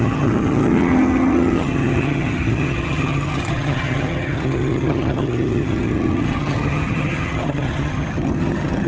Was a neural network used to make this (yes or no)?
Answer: yes